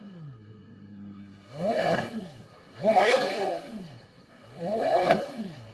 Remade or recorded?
remade